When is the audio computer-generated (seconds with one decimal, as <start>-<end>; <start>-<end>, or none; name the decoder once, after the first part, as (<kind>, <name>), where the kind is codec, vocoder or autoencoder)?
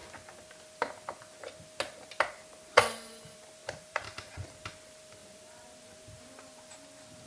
3.6-4.5 (vocoder, BigVGAN v2)